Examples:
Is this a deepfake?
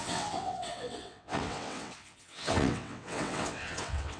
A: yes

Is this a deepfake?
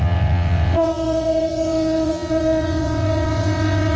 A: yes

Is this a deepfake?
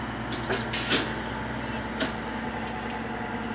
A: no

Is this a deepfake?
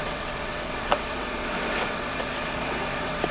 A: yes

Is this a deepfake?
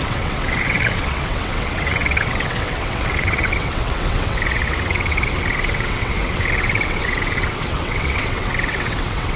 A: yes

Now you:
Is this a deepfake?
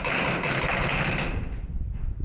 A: no